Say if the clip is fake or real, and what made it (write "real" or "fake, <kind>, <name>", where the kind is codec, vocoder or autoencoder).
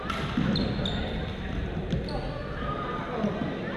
real